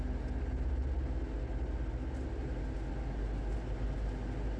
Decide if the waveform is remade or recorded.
recorded